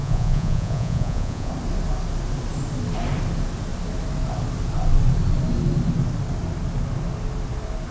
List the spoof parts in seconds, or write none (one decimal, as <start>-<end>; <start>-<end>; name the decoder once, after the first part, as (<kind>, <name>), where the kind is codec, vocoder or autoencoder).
0.0-1.5 (vocoder, Vocos)